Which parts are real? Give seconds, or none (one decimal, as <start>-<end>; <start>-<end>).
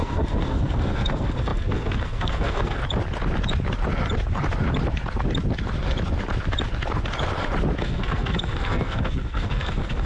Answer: 2.8-7.8